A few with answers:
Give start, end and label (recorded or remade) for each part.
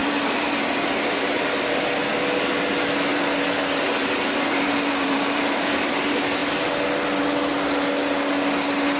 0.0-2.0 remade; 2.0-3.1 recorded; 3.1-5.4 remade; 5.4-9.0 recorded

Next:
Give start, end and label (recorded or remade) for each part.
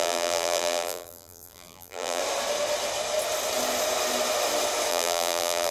0.0-2.2 remade; 2.2-4.9 recorded; 4.9-5.7 remade